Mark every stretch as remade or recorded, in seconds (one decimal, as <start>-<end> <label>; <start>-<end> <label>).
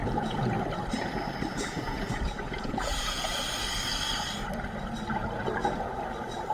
0.0-0.5 remade; 0.5-1.5 recorded; 1.5-3.3 remade; 3.3-6.5 recorded